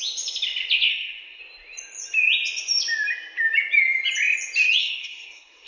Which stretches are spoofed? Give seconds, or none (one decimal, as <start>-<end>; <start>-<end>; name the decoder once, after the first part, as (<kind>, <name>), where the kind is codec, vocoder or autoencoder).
0.9-1.4 (codec, SNAC); 4.8-5.7